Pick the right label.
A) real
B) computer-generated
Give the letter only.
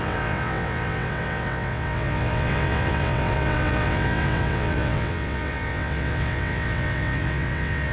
B